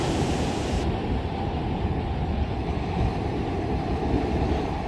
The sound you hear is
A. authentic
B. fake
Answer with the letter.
A